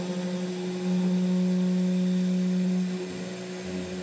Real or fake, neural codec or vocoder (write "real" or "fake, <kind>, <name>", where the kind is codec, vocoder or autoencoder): real